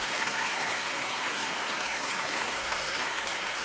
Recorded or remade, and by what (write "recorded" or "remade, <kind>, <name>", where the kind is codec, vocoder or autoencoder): remade, codec, SNAC